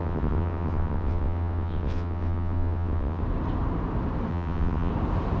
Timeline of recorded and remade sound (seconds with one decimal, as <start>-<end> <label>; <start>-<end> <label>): 0.0-3.2 remade; 3.2-4.3 recorded; 4.3-4.9 remade; 4.9-5.4 recorded

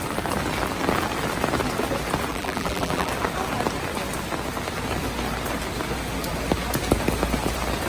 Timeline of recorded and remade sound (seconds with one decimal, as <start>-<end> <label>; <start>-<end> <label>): 0.0-2.3 recorded; 2.3-3.1 remade; 3.1-7.9 recorded

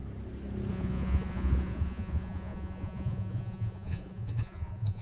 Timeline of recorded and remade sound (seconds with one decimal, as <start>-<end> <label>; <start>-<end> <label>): 0.0-0.7 recorded; 0.7-5.0 remade

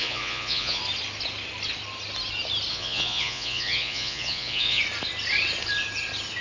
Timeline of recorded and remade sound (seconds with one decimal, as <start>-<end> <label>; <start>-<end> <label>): 0.0-0.8 remade; 0.8-2.7 recorded; 2.7-4.8 remade; 4.8-6.4 recorded

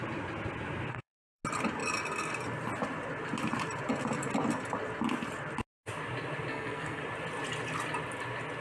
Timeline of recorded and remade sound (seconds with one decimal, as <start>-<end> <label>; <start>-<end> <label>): 0.0-0.9 recorded; 0.9-1.4 remade; 1.4-6.5 recorded; 6.5-7.0 remade; 7.0-8.6 recorded